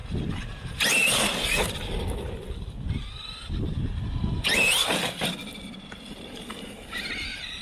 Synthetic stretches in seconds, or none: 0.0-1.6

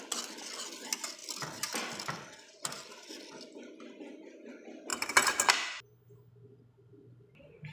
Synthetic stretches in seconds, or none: 4.9-5.5; 6.9-7.7